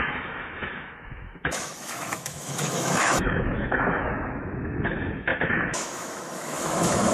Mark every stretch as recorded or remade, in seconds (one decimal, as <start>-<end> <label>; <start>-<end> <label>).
0.0-7.1 remade